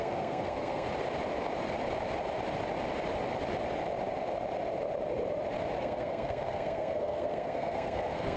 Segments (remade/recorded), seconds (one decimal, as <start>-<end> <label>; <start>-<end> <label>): 0.0-0.9 remade; 0.9-5.8 recorded; 5.8-8.4 remade